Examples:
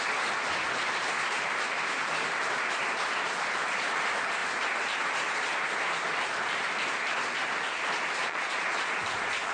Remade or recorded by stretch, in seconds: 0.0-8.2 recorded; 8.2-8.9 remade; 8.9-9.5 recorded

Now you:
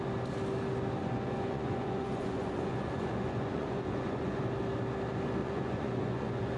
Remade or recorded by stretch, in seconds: 0.0-1.0 recorded; 1.0-4.4 remade; 4.4-5.4 recorded; 5.4-6.6 remade

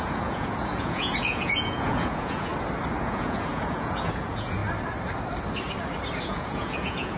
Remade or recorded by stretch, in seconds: 0.0-2.5 remade; 2.5-3.0 recorded; 3.0-4.6 remade; 4.6-6.2 recorded; 6.2-7.2 remade

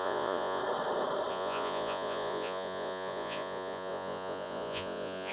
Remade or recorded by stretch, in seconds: 0.0-0.6 remade; 0.6-1.3 recorded; 1.3-5.3 remade

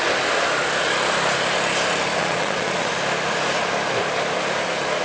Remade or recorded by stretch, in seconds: 0.0-2.2 recorded; 2.2-2.9 remade; 2.9-5.0 recorded